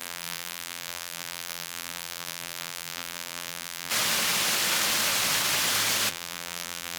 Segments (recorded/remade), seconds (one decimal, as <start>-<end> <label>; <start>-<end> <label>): 0.0-3.9 remade; 3.9-6.1 recorded; 6.1-7.0 remade